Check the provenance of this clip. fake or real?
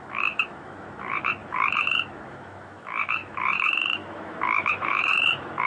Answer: fake